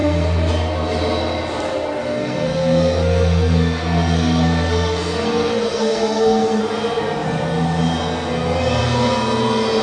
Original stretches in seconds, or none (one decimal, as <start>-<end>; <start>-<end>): 0.5-2.0; 6.6-9.8